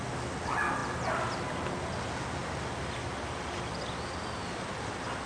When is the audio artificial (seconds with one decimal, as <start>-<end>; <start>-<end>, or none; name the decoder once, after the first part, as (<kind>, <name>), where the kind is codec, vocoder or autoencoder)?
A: none